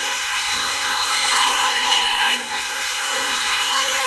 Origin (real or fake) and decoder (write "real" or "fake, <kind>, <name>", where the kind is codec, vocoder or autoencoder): fake, codec, SNAC